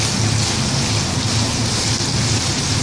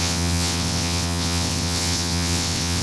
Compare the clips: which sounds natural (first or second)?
first